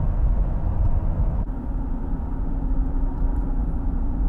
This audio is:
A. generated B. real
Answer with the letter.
A